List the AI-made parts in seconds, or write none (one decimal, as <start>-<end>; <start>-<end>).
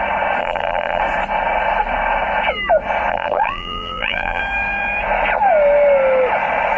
0.4-1.0; 3.1-4.4